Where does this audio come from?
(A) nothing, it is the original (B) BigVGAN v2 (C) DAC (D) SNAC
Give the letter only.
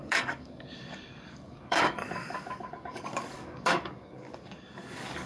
C